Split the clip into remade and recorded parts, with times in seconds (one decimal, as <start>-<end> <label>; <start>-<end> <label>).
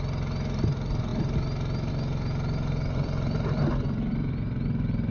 0.0-5.1 recorded